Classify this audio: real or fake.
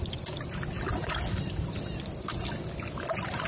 real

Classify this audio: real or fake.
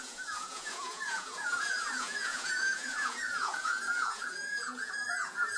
fake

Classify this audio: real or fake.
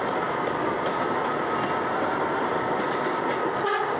real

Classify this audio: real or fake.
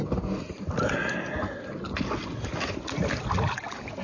real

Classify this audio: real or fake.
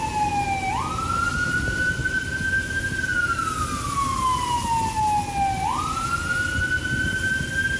real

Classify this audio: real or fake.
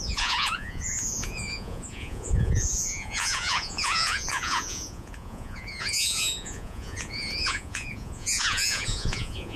fake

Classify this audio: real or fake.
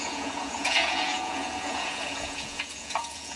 fake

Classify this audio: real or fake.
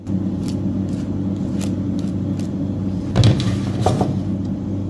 real